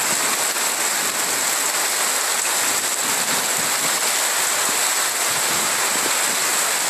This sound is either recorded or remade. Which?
recorded